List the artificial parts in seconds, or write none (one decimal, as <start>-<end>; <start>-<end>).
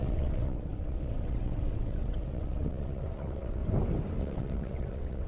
0.0-3.6; 4.2-5.3